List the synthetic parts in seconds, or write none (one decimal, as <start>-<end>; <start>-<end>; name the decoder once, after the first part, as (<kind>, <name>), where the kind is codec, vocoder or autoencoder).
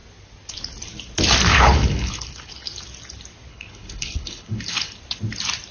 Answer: 1.5-2.8 (codec, HILCodec); 3.5-5.0